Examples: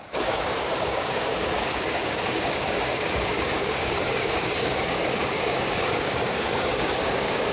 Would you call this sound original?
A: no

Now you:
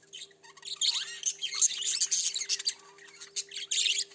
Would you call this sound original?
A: yes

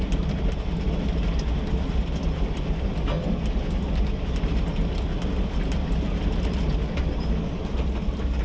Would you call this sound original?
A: yes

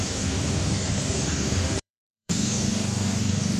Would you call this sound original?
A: no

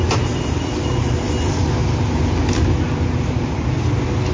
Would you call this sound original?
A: yes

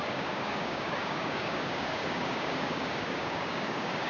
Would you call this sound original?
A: no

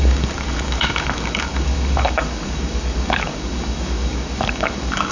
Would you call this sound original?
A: no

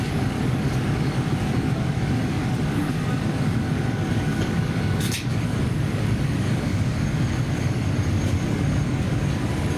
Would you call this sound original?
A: no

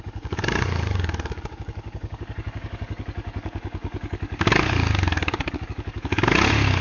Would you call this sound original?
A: no